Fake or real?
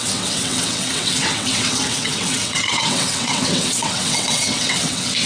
fake